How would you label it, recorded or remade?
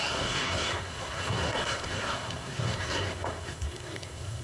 remade